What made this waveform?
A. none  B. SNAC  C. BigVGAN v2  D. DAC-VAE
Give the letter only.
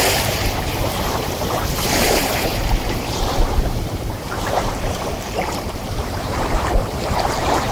C